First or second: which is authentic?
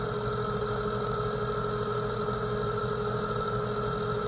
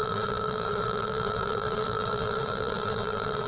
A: first